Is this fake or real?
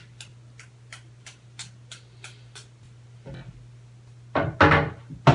real